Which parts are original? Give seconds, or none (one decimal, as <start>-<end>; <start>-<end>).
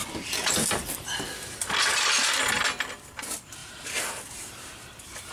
0.5-3.6